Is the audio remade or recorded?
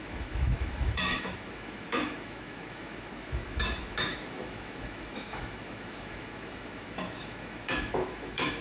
remade